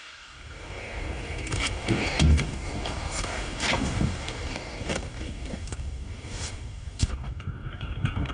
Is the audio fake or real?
fake